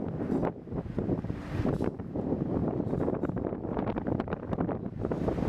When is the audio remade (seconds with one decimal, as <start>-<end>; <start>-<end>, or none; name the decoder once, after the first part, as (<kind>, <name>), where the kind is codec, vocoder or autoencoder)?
0.4-2.0 (vocoder, BigVGAN v2); 2.6-5.5